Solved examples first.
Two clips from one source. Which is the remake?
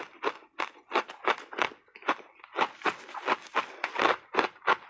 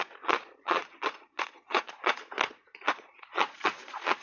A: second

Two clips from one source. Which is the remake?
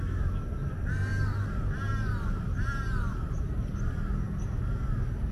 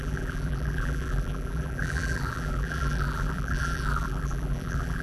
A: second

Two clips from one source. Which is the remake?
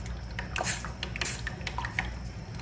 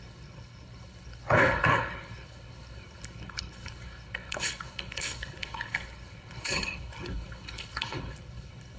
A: second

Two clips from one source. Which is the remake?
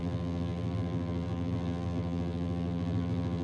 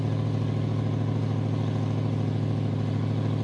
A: first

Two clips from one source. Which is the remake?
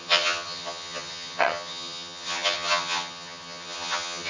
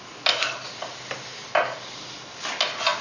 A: first